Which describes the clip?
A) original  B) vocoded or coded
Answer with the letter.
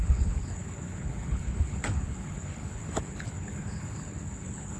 B